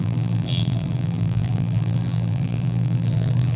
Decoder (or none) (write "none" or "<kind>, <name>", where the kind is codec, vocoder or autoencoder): vocoder, BigVGAN v2